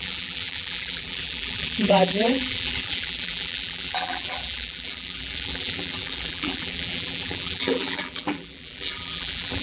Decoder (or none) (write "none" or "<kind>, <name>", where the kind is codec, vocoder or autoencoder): vocoder, BigVGAN v2